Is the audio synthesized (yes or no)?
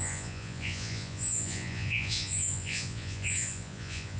yes